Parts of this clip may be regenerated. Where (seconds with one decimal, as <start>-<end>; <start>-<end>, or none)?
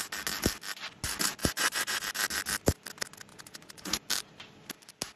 1.4-2.0; 3.3-4.1